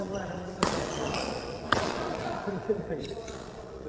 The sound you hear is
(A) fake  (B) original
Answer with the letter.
A